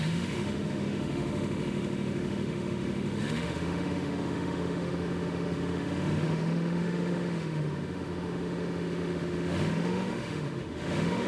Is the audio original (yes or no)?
no